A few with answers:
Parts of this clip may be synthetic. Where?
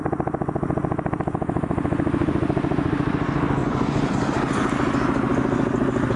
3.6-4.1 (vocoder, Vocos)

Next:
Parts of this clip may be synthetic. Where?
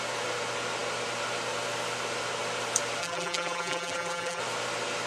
3.0-4.4 (vocoder, BigVGAN v2)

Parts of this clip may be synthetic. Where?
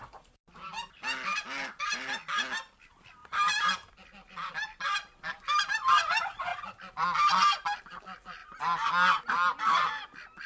none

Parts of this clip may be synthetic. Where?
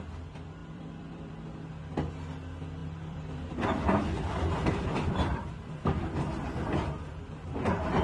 0.6-1.3 (vocoder, BigVGAN v2); 2.8-7.6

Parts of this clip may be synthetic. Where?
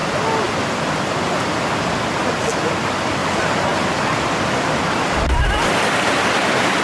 2.7-6.8 (vocoder, BigVGAN v2)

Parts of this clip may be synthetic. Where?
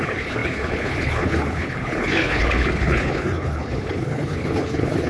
0.0-5.1 (codec, HILCodec)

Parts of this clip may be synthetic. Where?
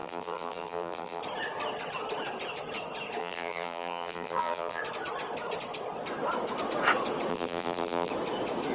0.0-1.2 (vocoder, BigVGAN v2); 3.2-4.8; 7.3-8.1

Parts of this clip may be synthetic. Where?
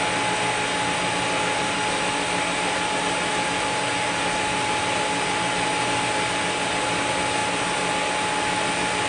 none